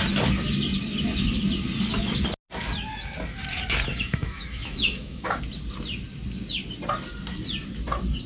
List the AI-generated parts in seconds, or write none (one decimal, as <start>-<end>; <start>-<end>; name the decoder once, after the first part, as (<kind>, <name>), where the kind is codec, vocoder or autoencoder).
3.9-5.4 (autoencoder, DAC-VAE)